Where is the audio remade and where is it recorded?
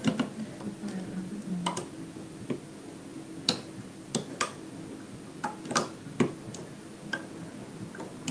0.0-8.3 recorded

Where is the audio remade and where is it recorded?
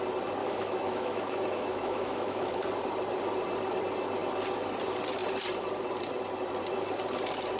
0.0-0.4 recorded; 0.4-2.6 remade; 2.6-7.6 recorded